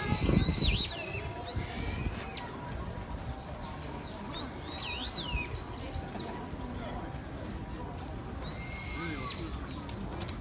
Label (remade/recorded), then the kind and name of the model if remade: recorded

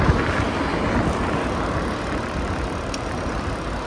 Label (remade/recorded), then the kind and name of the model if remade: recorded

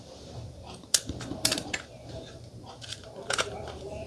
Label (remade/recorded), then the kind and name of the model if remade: remade, vocoder, BigVGAN v2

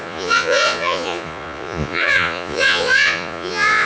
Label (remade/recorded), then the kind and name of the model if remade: remade, vocoder, Vocos